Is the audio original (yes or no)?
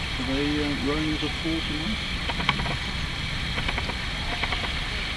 yes